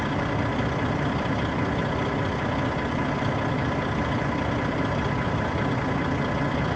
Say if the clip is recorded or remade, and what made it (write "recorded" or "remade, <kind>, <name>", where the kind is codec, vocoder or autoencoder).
recorded